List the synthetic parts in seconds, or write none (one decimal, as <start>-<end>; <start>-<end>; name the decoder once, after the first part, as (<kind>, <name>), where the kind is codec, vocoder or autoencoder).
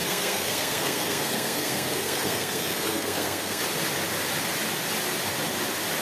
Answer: 0.0-3.6 (codec, SNAC)